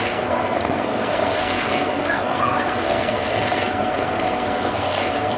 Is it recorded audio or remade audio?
remade